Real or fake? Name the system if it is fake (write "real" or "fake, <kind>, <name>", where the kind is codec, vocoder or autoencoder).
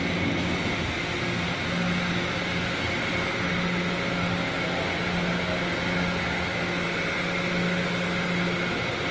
real